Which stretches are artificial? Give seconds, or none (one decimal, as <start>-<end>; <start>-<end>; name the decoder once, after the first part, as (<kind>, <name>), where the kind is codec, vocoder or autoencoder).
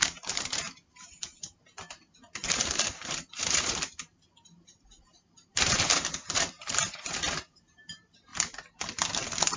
0.0-8.3 (vocoder, BigVGAN v2)